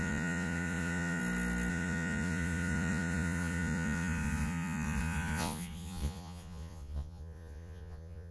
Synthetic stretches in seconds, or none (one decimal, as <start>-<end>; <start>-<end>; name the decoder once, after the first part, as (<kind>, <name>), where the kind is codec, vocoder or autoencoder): 0.0-1.2 (vocoder, Vocos); 1.7-8.3